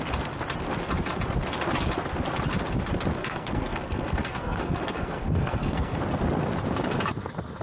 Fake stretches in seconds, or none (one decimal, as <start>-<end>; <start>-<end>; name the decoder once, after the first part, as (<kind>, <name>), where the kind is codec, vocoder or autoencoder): 3.2-6.0 (codec, SNAC)